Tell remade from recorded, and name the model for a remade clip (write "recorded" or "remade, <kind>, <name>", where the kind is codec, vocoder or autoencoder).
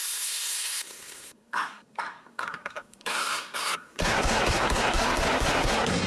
remade, codec, SNAC